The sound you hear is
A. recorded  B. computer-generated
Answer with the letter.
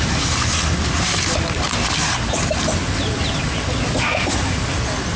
A